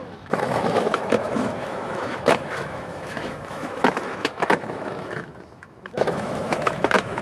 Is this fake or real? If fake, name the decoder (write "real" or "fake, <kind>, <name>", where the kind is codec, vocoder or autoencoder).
fake, autoencoder, DAC-VAE